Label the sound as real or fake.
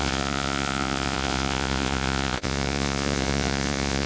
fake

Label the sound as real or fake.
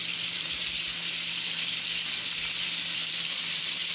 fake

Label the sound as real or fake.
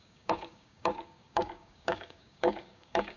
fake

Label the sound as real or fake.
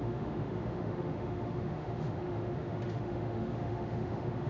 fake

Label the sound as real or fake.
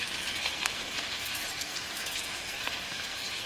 fake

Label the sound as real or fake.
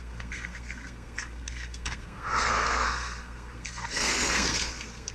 fake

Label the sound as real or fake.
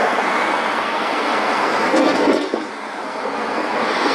fake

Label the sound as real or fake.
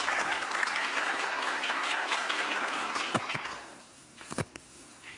fake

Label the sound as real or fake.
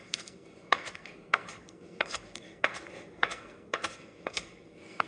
fake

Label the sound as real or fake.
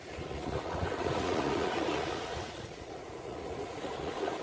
fake